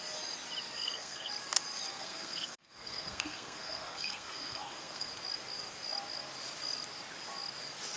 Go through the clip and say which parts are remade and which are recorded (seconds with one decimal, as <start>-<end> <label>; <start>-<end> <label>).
0.0-0.8 recorded; 0.8-1.3 remade; 1.3-1.9 recorded; 1.9-5.1 remade; 5.1-8.0 recorded